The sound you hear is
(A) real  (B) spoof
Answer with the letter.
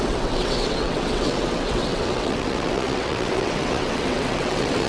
B